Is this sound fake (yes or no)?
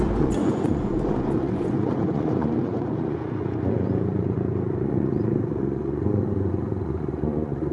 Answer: yes